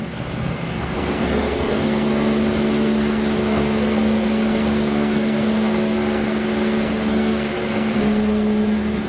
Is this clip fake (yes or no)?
yes